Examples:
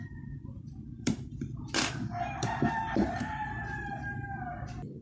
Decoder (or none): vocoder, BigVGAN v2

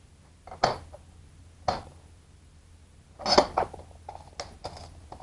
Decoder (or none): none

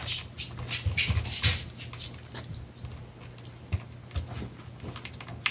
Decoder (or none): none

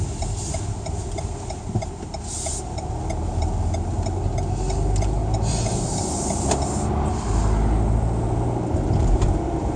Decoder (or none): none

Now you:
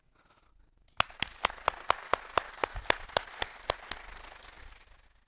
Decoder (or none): none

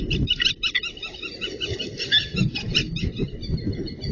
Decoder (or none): none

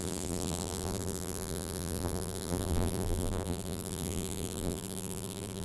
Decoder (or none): vocoder, BigVGAN v2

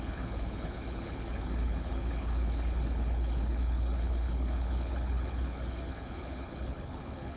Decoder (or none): codec, HILCodec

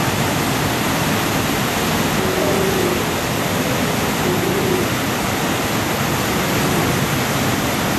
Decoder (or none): none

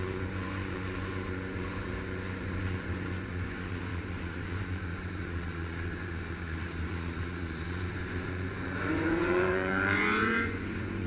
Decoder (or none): vocoder, Vocos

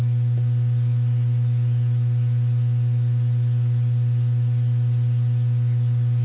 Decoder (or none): none